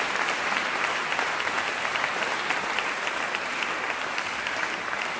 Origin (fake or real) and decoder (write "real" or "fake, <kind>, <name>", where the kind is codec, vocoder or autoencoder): real